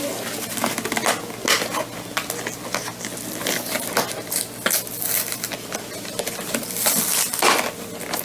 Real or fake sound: real